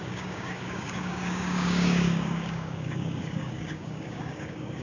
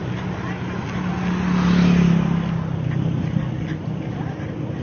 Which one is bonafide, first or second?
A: second